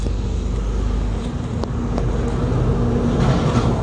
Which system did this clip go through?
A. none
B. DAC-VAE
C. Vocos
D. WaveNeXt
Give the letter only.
A